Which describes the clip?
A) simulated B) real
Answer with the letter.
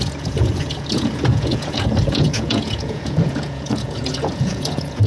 A